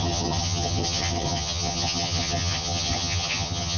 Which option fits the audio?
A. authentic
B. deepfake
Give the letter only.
B